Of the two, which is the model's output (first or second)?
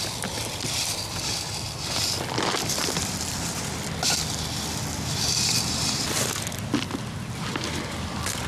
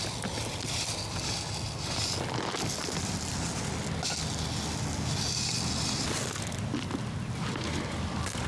first